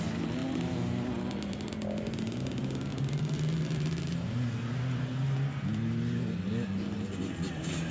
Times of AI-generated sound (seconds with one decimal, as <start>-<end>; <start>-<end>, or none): none

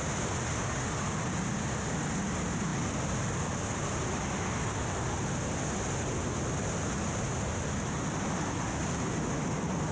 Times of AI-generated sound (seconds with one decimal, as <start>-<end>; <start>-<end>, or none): none

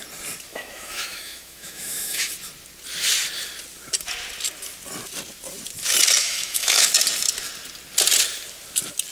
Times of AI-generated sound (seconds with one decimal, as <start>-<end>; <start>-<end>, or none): 0.5-2.3; 6.2-6.9

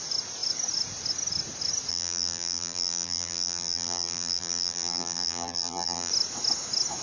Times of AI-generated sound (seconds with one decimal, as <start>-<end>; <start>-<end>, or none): 1.9-6.1

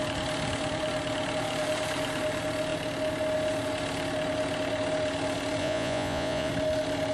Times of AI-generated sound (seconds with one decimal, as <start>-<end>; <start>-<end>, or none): 5.6-6.5

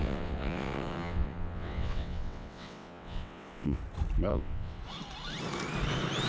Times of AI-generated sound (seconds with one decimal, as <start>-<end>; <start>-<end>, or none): 0.0-3.8; 4.3-4.8

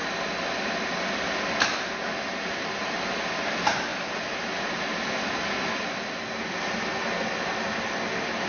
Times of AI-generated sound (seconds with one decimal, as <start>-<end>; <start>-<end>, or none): none

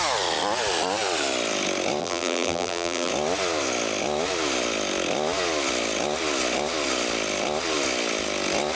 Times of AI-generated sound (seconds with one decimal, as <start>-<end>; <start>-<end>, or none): 2.0-3.1